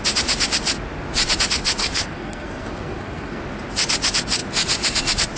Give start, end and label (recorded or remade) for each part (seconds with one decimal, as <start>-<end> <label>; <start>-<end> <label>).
0.0-1.8 recorded; 1.8-3.4 remade; 3.4-5.4 recorded